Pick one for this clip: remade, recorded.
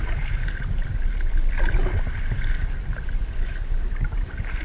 recorded